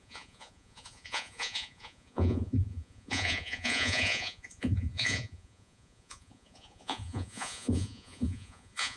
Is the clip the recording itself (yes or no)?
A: no